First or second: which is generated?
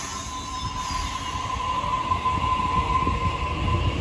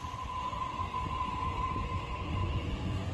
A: second